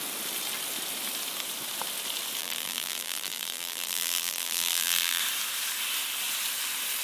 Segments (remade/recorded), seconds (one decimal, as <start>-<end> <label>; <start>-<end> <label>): 0.0-2.4 recorded; 2.4-5.2 remade; 5.2-7.0 recorded